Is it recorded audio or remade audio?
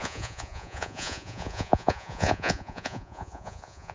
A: remade